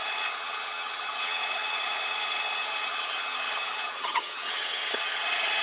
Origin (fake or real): fake